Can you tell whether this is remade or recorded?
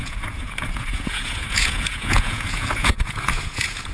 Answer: remade